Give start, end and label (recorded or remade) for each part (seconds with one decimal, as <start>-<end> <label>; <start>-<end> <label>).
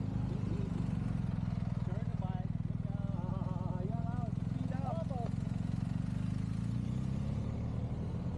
0.0-8.4 recorded